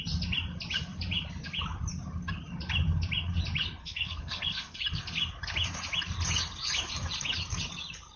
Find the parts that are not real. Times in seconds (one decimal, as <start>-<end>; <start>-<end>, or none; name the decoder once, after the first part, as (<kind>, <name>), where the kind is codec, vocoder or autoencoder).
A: 3.8-4.8 (codec, SNAC)